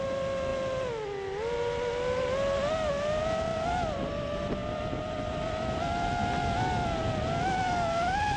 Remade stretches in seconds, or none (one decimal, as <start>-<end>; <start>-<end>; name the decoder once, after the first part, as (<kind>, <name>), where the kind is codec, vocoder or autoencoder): 3.5-4.1 (vocoder, BigVGAN v2); 4.6-5.8

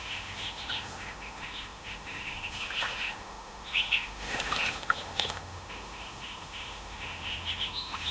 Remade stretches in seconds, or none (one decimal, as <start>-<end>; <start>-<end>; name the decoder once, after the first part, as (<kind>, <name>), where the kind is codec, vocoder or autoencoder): 0.0-8.1 (autoencoder, DAC-VAE)

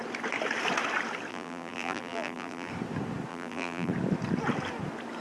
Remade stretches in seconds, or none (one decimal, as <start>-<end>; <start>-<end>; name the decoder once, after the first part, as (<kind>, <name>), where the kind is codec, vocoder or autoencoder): 1.3-2.7 (vocoder, BigVGAN v2); 3.3-3.9

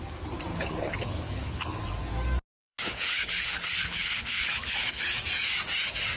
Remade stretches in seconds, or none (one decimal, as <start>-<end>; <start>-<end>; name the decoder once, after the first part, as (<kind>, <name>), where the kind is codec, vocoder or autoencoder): 0.5-1.8 (codec, HILCodec); 2.6-5.0

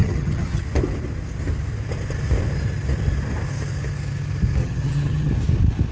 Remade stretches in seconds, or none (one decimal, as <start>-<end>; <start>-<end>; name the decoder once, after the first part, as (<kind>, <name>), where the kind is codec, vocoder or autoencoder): 0.0-0.6 (vocoder, HiFi-GAN); 4.6-5.3

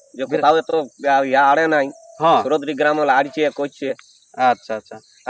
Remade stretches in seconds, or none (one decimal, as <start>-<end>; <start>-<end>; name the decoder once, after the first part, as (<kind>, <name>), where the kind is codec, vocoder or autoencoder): none